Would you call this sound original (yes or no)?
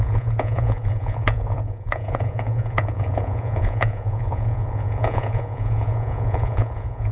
no